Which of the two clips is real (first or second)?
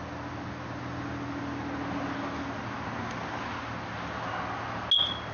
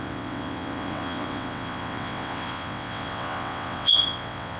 first